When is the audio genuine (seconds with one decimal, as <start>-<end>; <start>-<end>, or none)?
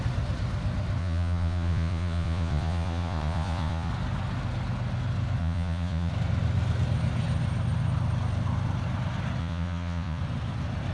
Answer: 0.0-1.0; 3.9-5.4; 6.1-9.4; 10.2-10.9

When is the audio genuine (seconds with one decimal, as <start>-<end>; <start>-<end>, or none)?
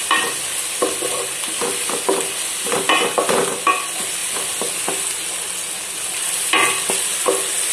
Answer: 0.0-7.7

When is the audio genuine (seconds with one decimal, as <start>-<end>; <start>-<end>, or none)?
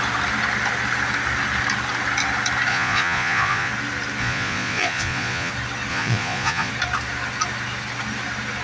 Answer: 0.0-2.7; 3.7-4.2; 5.5-5.9; 6.7-8.6